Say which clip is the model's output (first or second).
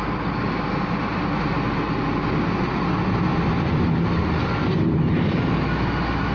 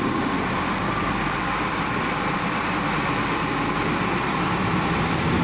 second